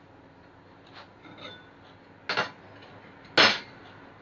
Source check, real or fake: real